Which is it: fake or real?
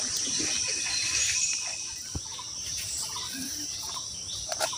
fake